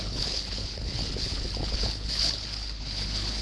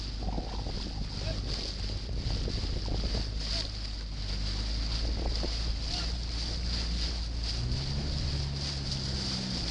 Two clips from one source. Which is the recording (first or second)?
second